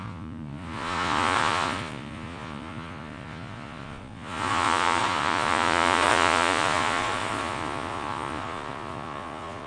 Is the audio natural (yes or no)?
no